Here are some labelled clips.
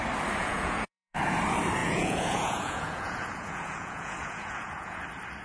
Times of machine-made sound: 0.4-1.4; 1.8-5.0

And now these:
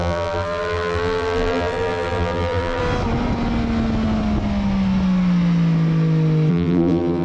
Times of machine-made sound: 0.0-2.8; 6.5-7.2

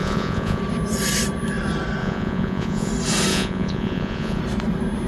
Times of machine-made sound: 0.0-0.6; 2.0-2.9; 3.3-4.4

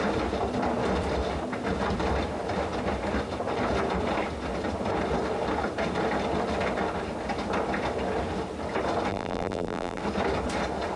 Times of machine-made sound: 9.1-10.0